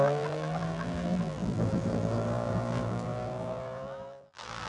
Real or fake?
fake